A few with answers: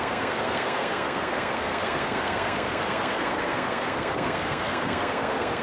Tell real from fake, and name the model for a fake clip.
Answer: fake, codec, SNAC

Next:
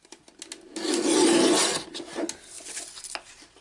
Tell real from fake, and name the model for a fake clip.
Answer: real